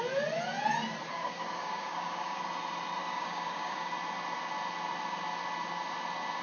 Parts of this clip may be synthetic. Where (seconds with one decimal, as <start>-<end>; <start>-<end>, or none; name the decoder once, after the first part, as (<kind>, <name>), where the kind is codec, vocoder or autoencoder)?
1.1-2.4 (codec, DAC); 3.0-3.9